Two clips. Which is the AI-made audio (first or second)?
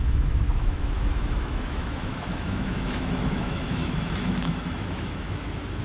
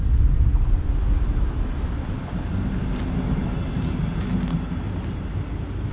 first